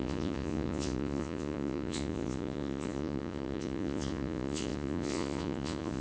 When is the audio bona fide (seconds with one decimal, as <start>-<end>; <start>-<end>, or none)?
none